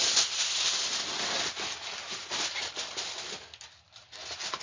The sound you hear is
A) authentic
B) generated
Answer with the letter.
A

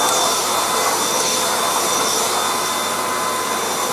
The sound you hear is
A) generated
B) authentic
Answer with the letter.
B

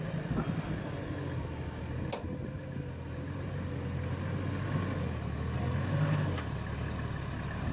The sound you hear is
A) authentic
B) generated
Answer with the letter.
A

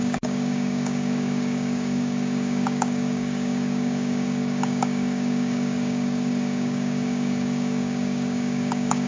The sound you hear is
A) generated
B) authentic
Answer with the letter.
A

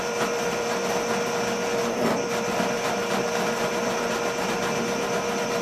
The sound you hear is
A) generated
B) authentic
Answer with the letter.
B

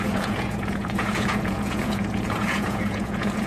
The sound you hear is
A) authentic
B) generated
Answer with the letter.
B